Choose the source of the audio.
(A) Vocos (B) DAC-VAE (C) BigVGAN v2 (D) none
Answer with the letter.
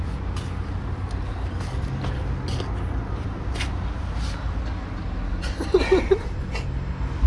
D